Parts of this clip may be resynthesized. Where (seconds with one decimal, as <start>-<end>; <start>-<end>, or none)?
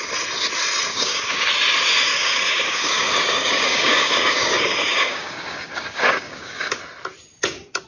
0.9-1.5; 2.1-6.8